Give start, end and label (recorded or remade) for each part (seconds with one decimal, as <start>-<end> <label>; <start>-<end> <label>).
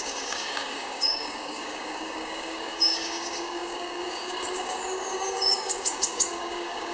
0.0-6.9 remade